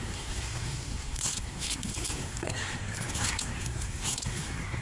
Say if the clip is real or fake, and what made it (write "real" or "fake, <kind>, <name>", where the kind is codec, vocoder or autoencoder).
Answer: fake, codec, SNAC